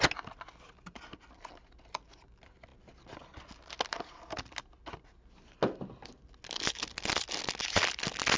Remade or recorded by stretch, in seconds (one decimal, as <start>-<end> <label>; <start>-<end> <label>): 0.0-8.4 recorded